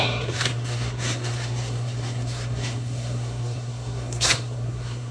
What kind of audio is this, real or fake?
fake